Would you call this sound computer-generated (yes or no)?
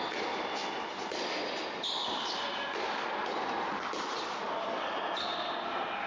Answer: no